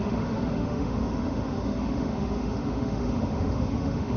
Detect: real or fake fake